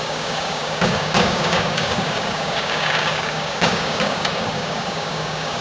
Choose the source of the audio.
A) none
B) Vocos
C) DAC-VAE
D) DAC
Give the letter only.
D